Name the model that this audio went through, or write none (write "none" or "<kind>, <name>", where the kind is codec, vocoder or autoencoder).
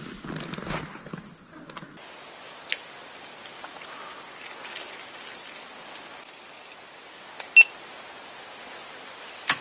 none